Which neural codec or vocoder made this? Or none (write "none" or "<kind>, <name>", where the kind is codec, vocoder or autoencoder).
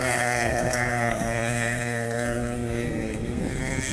codec, SNAC